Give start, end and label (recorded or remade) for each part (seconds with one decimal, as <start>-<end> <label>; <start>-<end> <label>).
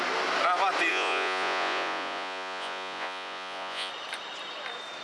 0.0-0.9 recorded; 0.9-3.9 remade; 3.9-5.0 recorded